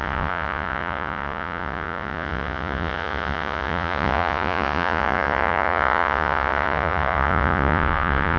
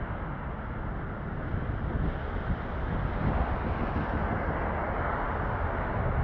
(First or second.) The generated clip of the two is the first